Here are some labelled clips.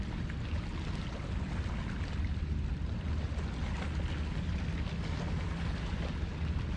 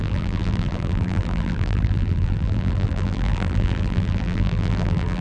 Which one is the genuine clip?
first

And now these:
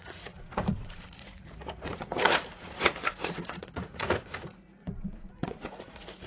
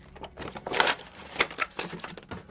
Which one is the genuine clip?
second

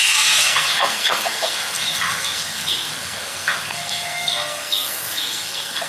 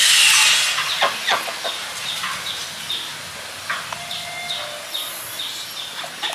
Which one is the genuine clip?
second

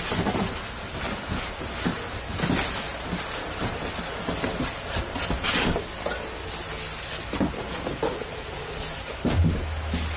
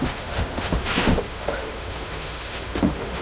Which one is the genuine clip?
first